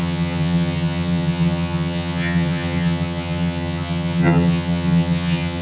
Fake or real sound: fake